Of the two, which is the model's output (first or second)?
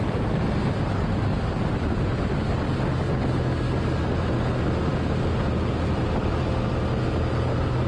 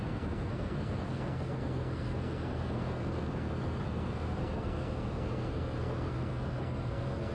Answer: second